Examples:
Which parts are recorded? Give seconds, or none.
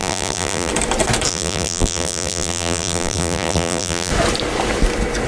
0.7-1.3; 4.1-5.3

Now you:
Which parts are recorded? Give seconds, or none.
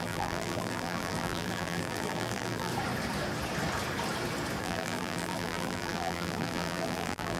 2.7-4.6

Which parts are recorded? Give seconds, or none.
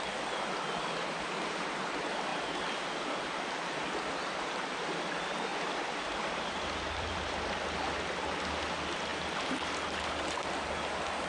0.0-5.5; 7.5-11.3